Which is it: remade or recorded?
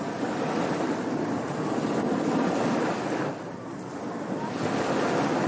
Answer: recorded